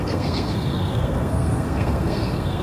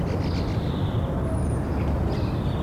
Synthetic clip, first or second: first